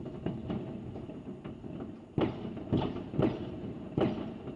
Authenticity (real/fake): fake